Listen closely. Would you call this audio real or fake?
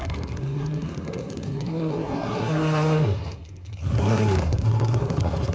fake